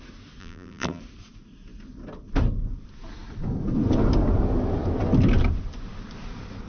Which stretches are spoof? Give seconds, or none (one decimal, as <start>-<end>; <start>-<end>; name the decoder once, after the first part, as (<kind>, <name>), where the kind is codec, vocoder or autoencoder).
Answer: 0.4-1.0 (vocoder, BigVGAN v2)